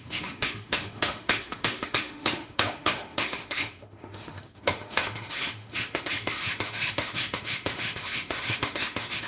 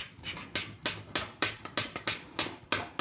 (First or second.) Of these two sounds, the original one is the second